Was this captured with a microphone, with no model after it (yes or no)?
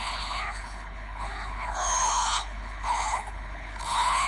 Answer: no